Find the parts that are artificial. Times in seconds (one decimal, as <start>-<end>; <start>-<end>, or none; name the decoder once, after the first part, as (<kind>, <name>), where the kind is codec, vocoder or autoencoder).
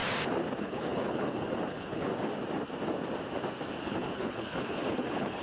0.6-2.1 (codec, HILCodec); 3.8-5.4